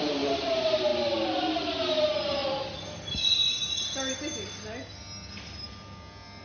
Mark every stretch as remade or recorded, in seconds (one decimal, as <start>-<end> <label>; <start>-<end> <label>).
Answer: 0.0-0.9 remade; 0.9-1.8 recorded; 1.8-2.4 remade; 2.4-6.4 recorded